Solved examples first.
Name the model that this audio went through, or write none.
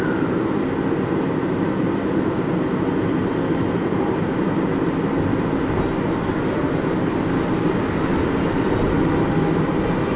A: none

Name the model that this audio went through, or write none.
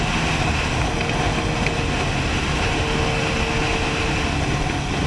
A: none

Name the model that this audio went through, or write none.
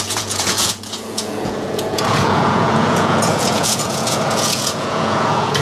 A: vocoder, Vocos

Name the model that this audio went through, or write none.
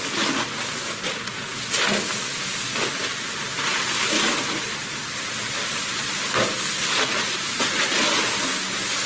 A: none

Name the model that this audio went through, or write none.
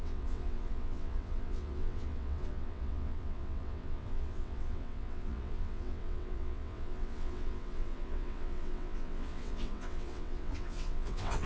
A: vocoder, WaveNeXt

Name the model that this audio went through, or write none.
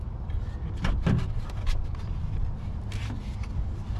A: none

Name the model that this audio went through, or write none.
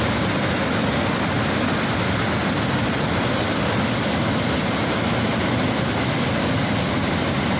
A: none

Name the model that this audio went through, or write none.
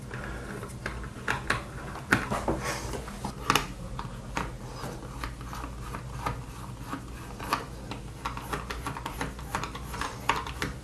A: none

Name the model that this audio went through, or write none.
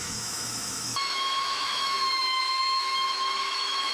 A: autoencoder, DAC-VAE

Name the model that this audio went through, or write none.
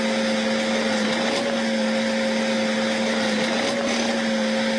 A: none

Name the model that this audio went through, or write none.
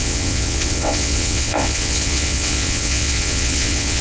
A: vocoder, WaveNeXt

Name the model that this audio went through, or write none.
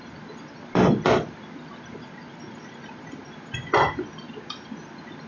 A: none